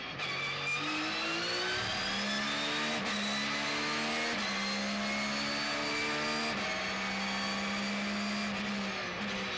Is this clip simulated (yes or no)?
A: no